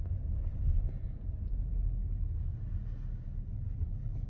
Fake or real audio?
real